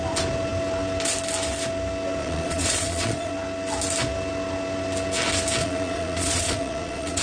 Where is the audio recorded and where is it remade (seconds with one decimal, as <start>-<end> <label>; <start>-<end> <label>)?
0.0-2.2 recorded; 2.2-3.3 remade; 3.3-5.6 recorded; 5.6-7.2 remade